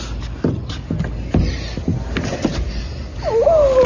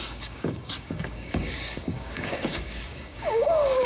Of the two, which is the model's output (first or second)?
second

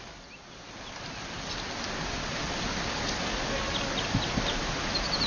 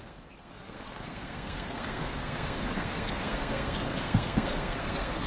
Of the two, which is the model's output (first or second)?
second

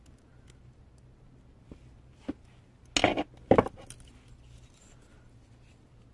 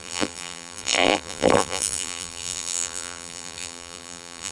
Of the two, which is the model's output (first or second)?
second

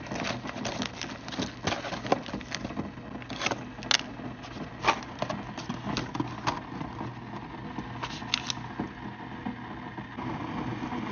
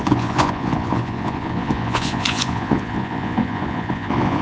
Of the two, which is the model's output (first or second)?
second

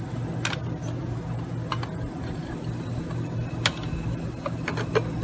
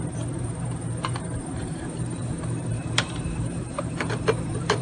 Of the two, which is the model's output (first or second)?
second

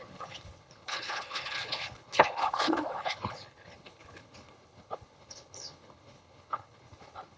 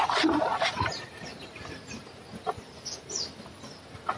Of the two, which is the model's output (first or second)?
first